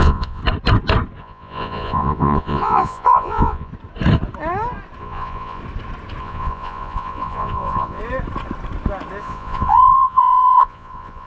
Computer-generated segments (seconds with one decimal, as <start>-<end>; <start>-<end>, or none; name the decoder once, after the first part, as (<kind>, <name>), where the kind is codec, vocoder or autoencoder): 0.0-0.4 (vocoder, Vocos); 1.2-3.7; 5.0-5.6; 6.2-8.0; 9.2-11.3